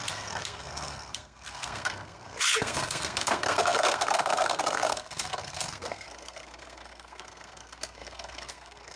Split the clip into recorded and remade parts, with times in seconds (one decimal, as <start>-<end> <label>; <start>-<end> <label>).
0.0-9.0 remade